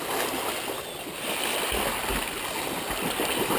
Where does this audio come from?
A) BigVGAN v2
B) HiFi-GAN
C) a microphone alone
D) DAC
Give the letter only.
C